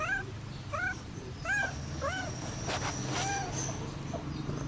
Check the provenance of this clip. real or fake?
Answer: real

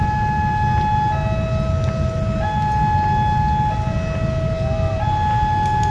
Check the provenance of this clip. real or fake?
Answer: real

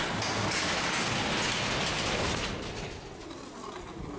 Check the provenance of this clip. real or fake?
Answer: real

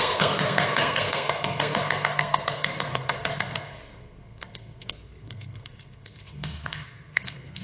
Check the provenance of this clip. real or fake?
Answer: fake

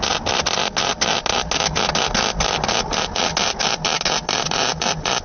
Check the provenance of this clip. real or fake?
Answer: real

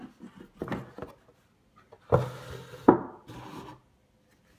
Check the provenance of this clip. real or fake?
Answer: real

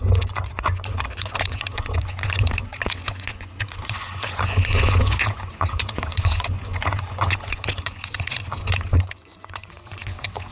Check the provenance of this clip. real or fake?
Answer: fake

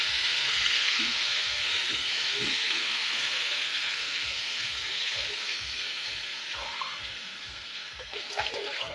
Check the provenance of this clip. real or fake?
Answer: fake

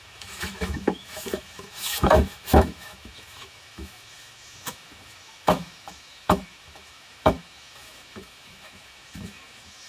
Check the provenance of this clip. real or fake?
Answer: fake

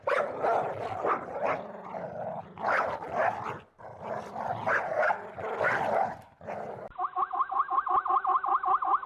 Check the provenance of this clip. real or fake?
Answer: real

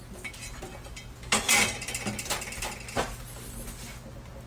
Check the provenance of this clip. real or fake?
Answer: real